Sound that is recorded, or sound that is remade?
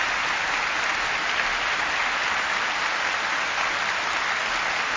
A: recorded